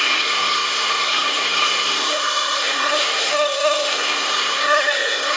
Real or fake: fake